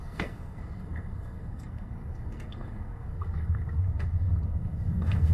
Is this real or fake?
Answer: fake